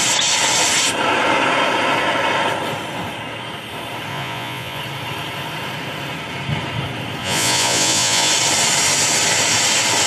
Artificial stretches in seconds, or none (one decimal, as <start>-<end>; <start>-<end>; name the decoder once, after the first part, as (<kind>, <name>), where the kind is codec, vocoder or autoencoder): 4.1-4.8 (vocoder, Vocos); 7.2-8.3